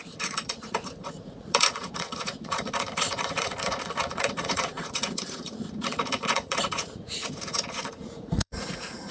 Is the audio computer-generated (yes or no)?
yes